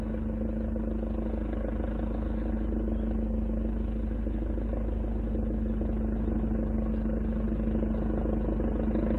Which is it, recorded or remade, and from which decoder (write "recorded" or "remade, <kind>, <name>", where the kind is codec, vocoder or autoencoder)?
recorded